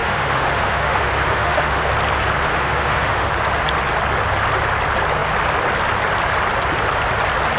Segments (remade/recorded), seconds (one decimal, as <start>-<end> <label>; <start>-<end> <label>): 0.0-1.9 remade; 1.9-2.5 recorded; 2.5-3.3 remade; 3.3-7.6 recorded